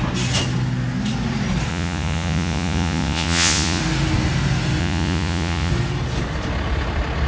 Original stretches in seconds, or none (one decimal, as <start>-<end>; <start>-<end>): 0.0-1.7; 3.8-4.8; 5.7-7.3